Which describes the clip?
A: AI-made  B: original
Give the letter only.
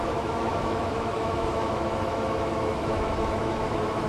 A